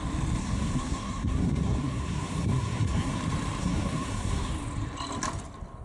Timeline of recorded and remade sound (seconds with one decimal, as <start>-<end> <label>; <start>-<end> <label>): 0.0-0.4 recorded; 0.4-3.2 remade; 3.2-3.6 recorded; 3.6-4.5 remade; 4.5-5.8 recorded